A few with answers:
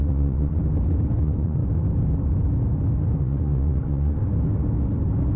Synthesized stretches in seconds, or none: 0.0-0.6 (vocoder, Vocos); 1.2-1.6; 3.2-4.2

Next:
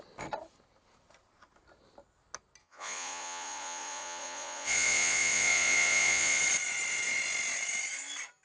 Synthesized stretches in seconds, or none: 2.6-6.4 (vocoder, Vocos)

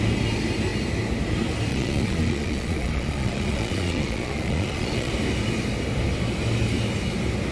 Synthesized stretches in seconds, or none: 1.7-5.1 (vocoder, Vocos)

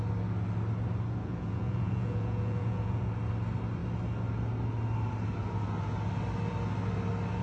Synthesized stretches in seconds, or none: 1.2-3.1 (vocoder, Vocos)

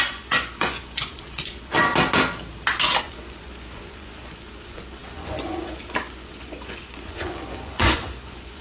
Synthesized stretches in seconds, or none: 0.0-1.9 (vocoder, Vocos); 3.0-8.6

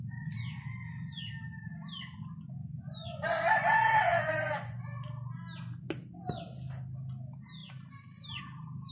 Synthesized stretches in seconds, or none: 2.6-4.8 (vocoder, Vocos)

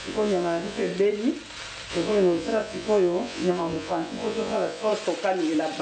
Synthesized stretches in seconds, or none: 0.0-0.9 (vocoder, Vocos); 1.9-4.9

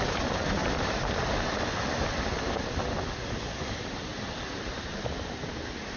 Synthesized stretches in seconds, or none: none